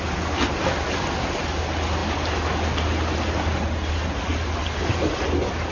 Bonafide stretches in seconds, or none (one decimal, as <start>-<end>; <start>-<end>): 0.0-5.7